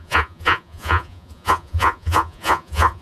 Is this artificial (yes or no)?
yes